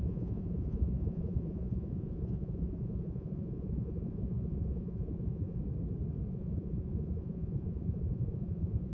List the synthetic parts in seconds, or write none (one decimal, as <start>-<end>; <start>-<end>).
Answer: 0.0-5.6; 6.3-8.9